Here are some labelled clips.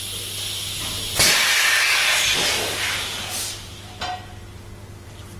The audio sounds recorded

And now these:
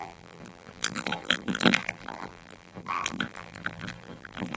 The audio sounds remade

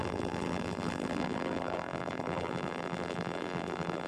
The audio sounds remade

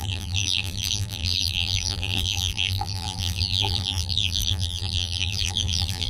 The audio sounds remade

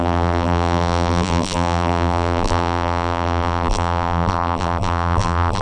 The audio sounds remade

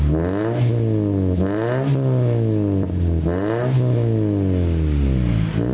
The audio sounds recorded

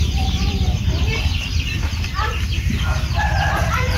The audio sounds remade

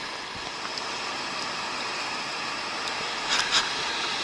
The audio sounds recorded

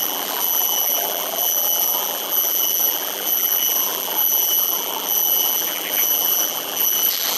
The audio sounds remade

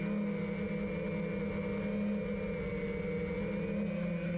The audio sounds recorded